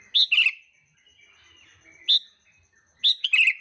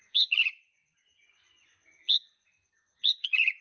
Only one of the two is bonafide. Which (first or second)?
first